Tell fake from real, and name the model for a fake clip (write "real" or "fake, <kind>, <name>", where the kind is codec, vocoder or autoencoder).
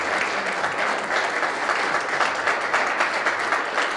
real